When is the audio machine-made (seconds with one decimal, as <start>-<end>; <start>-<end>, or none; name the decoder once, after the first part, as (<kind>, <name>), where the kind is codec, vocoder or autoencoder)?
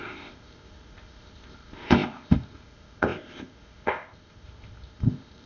0.0-5.5 (codec, ZipCodec)